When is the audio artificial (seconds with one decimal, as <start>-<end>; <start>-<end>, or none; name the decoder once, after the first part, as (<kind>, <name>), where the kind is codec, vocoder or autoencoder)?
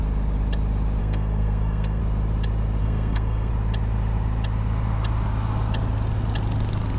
1.0-2.0 (codec, SNAC); 2.8-3.5